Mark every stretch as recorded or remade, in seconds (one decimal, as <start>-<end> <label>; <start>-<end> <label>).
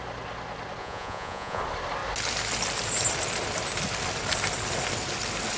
0.0-0.8 recorded; 0.8-1.6 remade; 1.6-5.6 recorded